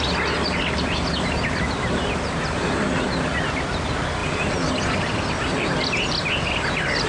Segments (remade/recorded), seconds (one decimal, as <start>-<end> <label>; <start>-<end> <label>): 0.0-7.1 recorded